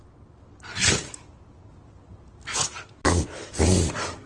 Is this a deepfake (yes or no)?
no